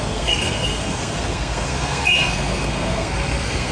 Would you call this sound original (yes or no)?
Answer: no